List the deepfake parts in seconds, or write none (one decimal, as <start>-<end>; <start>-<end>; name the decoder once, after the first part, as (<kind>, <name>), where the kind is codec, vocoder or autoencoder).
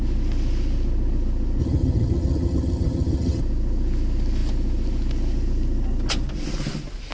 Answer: 1.6-3.4 (vocoder, HiFi-GAN)